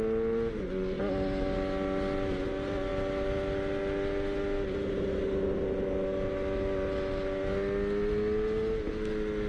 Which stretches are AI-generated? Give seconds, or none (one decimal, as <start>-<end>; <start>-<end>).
none